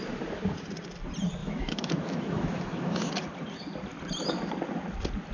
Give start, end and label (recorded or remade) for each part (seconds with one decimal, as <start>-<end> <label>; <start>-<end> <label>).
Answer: 0.0-1.4 recorded; 1.4-3.1 remade; 3.1-5.3 recorded